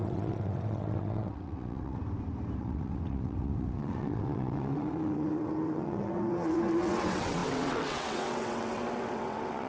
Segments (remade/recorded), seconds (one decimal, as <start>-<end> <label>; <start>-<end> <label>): 0.0-2.0 remade; 2.0-2.6 recorded; 2.6-9.7 remade

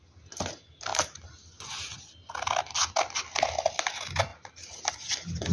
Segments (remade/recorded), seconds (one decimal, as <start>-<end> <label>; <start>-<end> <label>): 0.0-5.5 recorded

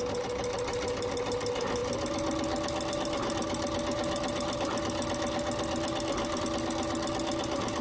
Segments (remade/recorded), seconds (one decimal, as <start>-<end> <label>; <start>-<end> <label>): 0.0-7.8 recorded

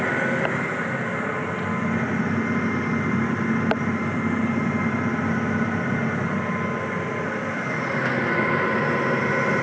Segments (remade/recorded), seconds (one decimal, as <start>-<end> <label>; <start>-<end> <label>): 0.0-9.6 recorded

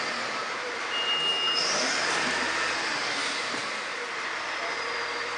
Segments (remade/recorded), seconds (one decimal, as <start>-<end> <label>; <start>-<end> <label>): 0.0-5.4 recorded